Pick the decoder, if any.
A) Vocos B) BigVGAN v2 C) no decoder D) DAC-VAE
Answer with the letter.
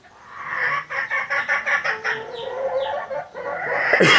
C